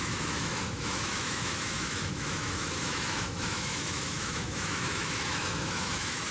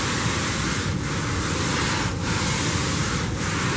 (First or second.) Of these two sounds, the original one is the second